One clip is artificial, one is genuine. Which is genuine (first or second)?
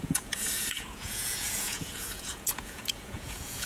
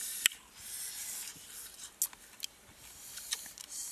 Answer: second